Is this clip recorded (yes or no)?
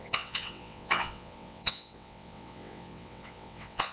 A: no